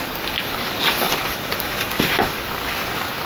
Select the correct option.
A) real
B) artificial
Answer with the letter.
B